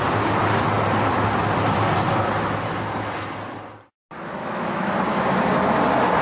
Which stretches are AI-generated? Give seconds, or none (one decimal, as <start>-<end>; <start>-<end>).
4.4-4.9